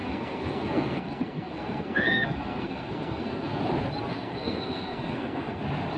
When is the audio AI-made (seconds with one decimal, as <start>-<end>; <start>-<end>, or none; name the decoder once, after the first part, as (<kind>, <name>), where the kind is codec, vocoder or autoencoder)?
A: 0.0-3.6 (codec, SNAC); 4.1-5.6